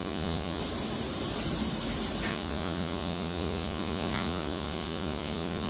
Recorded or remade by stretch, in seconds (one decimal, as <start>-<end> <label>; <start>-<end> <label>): 0.0-0.6 remade; 0.6-2.3 recorded; 2.3-5.7 remade